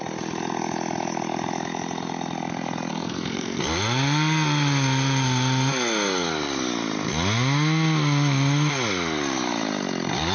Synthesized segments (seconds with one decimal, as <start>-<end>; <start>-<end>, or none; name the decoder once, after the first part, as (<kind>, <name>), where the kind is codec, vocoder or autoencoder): 2.9-3.6 (codec, SNAC)